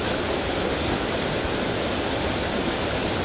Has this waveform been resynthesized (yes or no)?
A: no